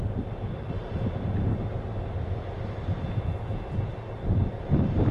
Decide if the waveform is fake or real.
real